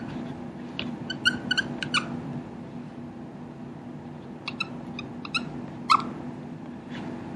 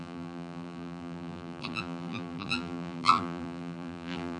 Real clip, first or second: first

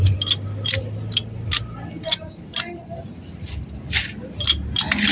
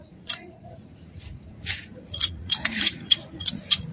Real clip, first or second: first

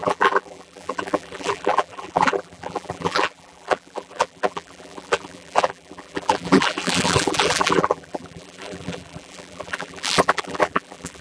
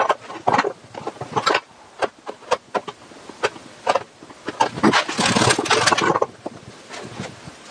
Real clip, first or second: second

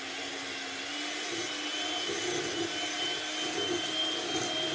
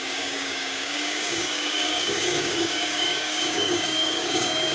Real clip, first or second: first